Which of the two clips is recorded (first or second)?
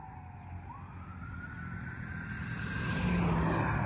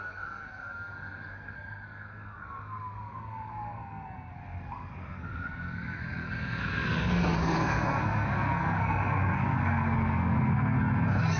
first